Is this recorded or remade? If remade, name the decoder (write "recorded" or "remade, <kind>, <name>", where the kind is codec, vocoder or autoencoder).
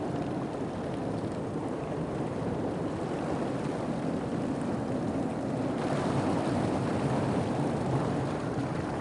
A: recorded